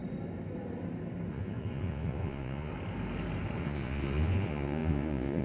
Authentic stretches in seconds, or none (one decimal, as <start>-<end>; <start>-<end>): 0.0-1.3; 2.7-3.6